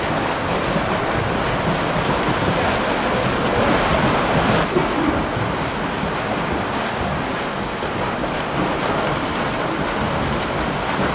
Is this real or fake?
real